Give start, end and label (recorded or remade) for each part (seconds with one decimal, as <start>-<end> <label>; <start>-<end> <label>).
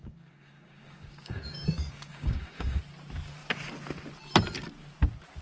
0.0-2.8 remade; 2.8-5.4 recorded